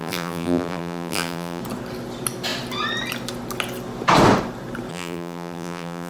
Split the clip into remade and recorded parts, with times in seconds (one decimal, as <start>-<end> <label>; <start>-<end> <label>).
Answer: 0.0-1.6 remade; 1.6-4.9 recorded; 4.9-6.1 remade